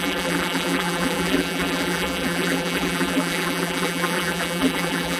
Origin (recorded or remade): remade